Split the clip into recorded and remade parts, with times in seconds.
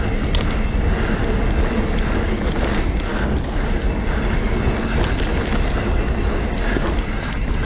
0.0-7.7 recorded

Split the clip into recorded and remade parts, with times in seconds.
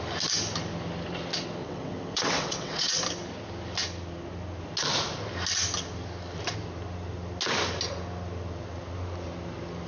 0.0-1.6 recorded; 1.6-3.0 remade; 3.0-9.9 recorded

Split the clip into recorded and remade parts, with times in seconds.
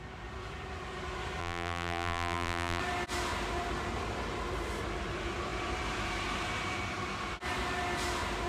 0.0-1.4 recorded; 1.4-2.8 remade; 2.8-8.5 recorded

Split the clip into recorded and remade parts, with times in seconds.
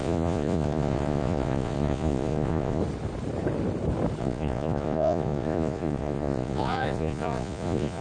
0.0-2.8 remade; 2.8-4.2 recorded; 4.2-8.0 remade